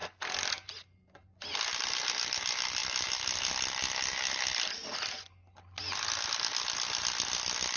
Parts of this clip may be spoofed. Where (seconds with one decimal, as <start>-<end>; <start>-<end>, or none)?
none